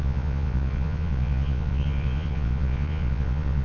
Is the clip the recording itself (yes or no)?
no